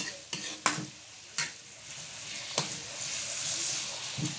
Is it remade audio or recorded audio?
recorded